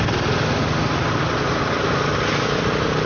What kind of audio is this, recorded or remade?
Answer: recorded